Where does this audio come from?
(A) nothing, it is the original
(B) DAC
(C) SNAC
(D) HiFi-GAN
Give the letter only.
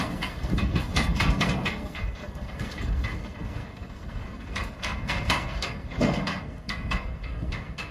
C